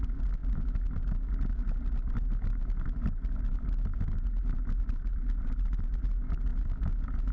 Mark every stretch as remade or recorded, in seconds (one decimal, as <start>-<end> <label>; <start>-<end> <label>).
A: 0.0-7.3 recorded